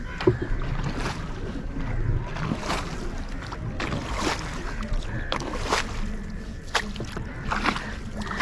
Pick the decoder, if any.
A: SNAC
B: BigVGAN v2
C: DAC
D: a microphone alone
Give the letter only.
D